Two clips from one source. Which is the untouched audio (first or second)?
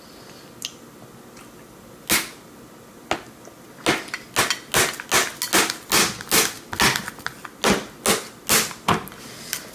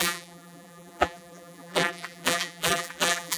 first